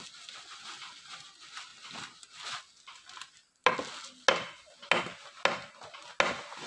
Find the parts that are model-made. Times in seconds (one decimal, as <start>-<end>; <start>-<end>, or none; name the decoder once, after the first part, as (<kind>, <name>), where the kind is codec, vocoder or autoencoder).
none